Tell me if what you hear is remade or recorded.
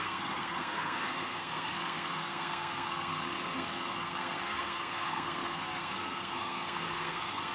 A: remade